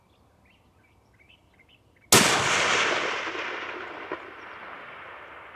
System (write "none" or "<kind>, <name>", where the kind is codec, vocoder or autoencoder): none